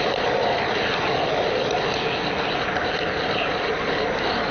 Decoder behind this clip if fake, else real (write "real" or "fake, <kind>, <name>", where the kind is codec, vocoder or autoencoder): real